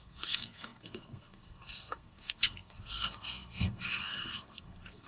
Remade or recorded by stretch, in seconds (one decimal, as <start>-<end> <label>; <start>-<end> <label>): 0.0-5.1 remade